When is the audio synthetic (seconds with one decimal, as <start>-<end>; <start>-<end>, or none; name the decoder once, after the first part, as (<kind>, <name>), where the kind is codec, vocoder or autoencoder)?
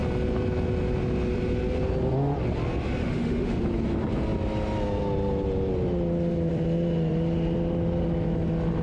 3.0-3.6 (autoencoder, DAC-VAE)